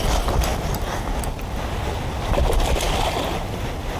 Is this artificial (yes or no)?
no